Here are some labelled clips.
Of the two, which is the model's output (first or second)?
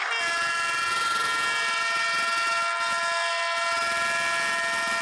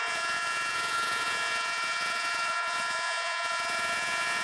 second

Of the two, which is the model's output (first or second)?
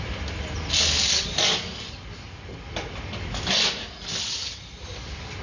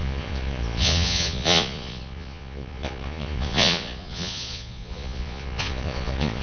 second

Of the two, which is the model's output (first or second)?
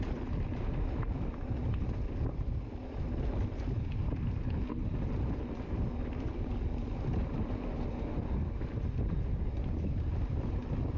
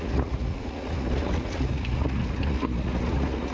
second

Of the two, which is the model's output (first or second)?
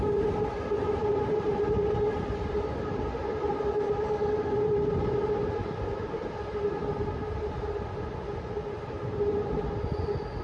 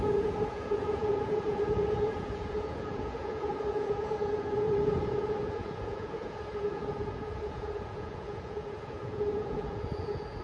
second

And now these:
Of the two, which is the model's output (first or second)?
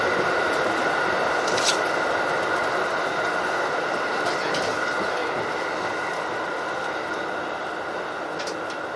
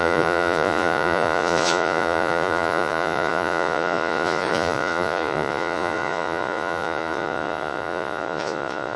second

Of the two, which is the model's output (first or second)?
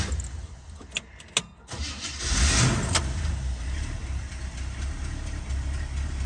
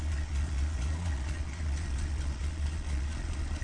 second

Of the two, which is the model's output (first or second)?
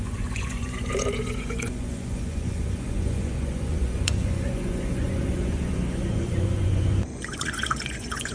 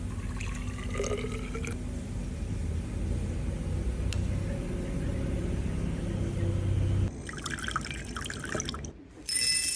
first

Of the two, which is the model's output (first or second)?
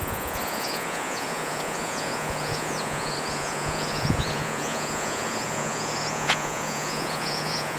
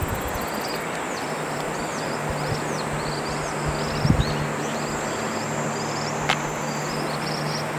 first